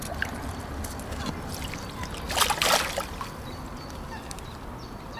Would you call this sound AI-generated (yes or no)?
no